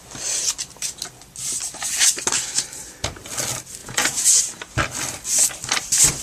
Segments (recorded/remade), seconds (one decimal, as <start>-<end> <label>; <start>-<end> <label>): 0.0-3.8 recorded; 3.8-4.4 remade; 4.4-6.2 recorded